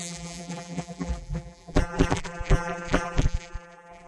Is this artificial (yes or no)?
yes